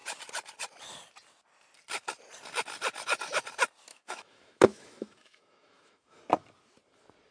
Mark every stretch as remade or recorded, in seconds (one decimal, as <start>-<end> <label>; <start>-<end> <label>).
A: 0.0-3.9 recorded; 3.9-6.2 remade; 6.2-7.3 recorded